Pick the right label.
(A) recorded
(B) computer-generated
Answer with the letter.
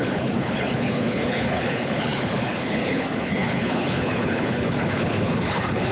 B